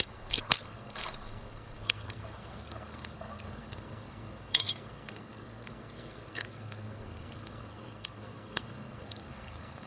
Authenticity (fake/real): fake